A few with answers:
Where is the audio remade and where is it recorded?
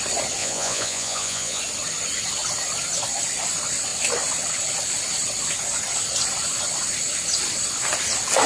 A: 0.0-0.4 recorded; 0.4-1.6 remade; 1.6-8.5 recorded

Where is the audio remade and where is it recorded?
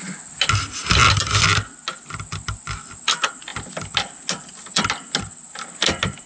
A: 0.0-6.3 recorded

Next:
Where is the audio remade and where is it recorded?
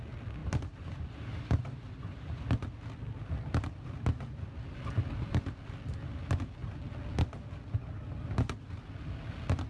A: 0.0-0.4 recorded; 0.4-2.4 remade; 2.4-9.7 recorded